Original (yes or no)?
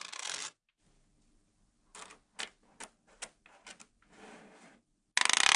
yes